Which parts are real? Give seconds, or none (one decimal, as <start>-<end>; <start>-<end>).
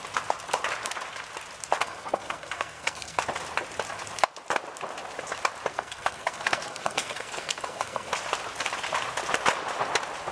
0.0-1.8; 3.2-5.7; 8.1-10.3